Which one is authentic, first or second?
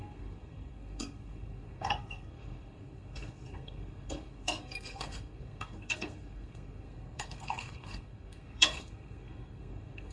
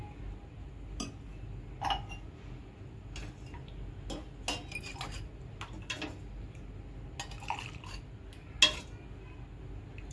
second